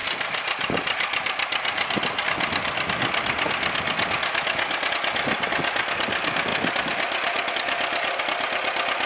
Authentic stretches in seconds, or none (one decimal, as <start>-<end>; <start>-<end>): 0.0-9.1